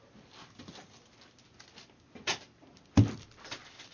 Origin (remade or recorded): recorded